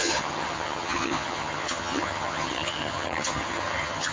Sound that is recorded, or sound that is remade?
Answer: remade